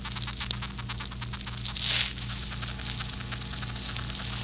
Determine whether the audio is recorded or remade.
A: recorded